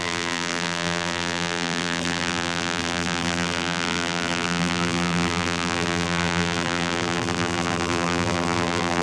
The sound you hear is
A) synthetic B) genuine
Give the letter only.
A